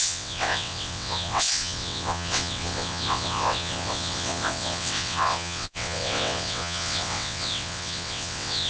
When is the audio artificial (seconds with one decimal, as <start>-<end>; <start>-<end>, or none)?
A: 0.0-8.7